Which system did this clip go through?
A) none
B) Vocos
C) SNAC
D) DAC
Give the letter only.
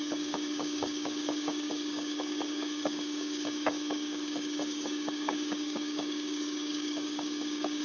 D